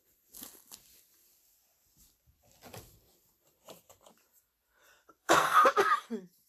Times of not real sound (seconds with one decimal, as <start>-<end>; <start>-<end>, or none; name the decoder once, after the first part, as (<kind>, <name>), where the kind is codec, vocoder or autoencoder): 5.2-5.9 (codec, SNAC)